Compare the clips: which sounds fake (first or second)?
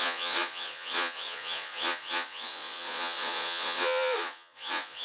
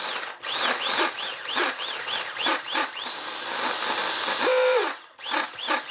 first